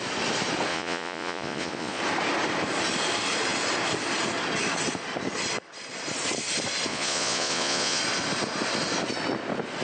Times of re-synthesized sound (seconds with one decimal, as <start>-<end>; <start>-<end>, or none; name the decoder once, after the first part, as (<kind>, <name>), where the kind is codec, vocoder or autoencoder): 0.7-2.0 (vocoder, Vocos); 6.9-8.0